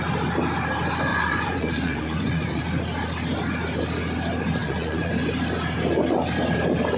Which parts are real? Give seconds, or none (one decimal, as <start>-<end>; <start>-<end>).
0.0-1.1; 2.6-4.6; 5.1-7.0